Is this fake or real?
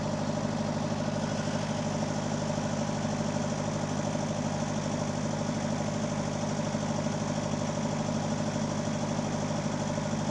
real